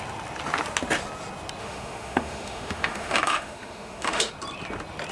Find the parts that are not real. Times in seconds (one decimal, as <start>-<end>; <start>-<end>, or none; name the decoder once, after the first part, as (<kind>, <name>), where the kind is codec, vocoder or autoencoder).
1.6-4.3 (autoencoder, DAC-VAE)